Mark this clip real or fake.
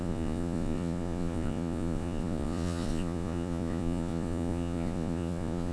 fake